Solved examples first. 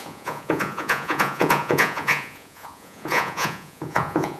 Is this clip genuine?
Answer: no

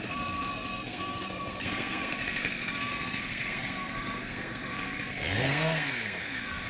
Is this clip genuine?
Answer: no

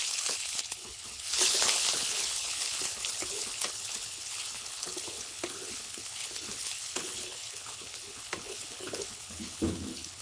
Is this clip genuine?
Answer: no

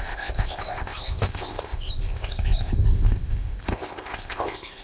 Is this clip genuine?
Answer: no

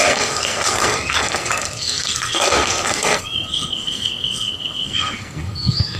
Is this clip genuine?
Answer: no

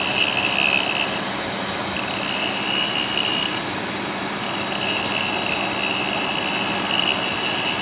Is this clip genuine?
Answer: yes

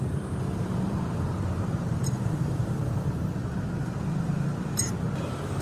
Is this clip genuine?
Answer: no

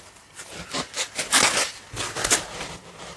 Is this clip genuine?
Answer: no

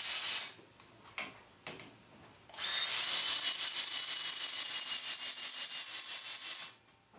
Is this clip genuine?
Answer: yes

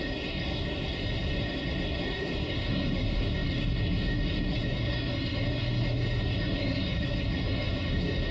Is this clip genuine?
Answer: no